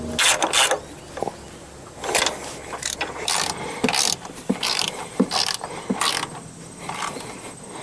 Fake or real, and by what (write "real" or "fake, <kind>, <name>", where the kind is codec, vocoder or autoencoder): real